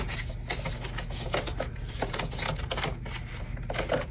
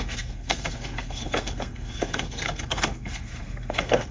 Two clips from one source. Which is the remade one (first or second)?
second